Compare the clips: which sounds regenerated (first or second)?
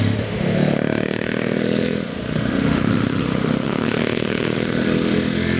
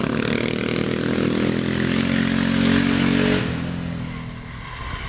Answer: first